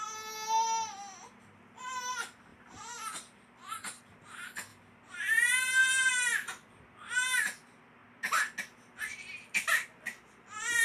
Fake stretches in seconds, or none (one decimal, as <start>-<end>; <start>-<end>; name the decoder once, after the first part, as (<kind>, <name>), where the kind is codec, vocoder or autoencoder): 2.5-4.0 (vocoder, BigVGAN v2); 4.7-6.1